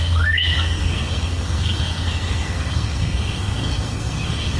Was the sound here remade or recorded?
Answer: remade